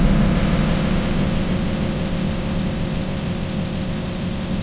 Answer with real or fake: fake